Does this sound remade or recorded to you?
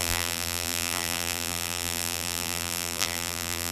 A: remade